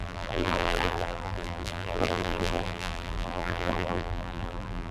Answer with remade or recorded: remade